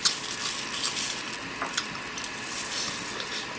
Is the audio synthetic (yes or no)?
no